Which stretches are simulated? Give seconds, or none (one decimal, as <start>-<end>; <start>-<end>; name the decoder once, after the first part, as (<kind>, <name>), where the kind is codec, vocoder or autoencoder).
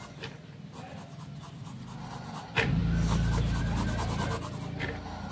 none